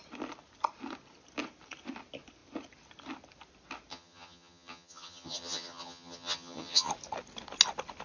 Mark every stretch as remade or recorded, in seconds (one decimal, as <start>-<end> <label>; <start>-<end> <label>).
0.0-3.9 recorded; 3.9-6.9 remade; 6.9-8.0 recorded